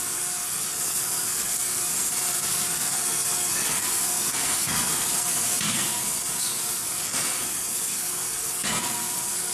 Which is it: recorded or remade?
remade